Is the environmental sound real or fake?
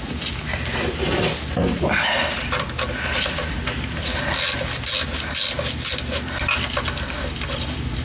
real